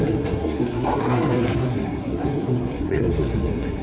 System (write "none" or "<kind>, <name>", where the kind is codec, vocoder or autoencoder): codec, SNAC